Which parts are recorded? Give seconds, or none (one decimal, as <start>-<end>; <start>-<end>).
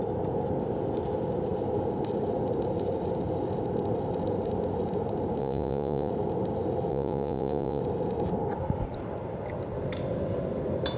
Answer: 0.0-5.4; 6.1-6.9; 7.8-11.0